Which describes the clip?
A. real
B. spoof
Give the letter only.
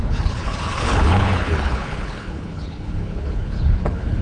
B